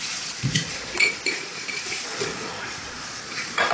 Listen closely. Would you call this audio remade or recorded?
remade